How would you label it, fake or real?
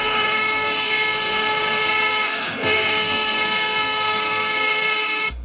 fake